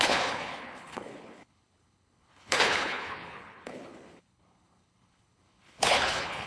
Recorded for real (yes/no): no